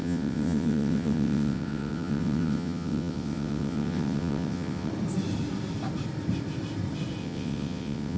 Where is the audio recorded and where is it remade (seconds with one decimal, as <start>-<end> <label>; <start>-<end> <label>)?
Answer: 0.0-4.9 remade; 4.9-7.2 recorded; 7.2-8.2 remade